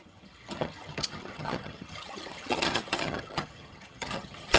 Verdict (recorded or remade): remade